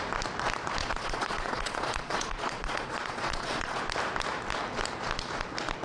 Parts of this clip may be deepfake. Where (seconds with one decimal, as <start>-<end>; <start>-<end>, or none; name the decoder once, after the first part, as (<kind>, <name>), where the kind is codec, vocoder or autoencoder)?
0.8-3.8 (vocoder, Vocos)